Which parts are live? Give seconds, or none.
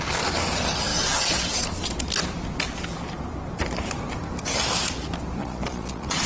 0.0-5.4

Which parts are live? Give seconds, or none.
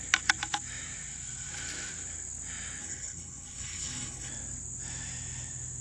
0.0-2.8; 4.3-5.8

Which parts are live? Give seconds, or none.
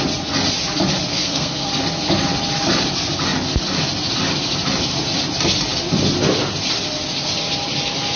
0.0-1.1; 1.7-8.2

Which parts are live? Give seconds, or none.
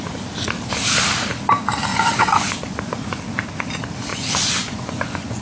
0.0-1.9; 3.2-4.1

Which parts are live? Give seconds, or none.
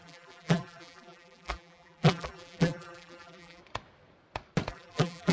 3.6-4.7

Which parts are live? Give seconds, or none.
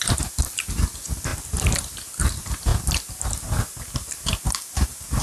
0.0-5.2